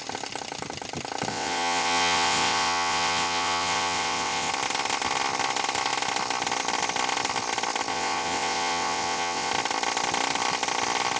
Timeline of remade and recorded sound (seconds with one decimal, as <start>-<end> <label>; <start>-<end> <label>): 0.0-1.3 recorded; 1.3-4.5 remade; 4.5-7.9 recorded; 7.9-9.5 remade; 9.5-11.2 recorded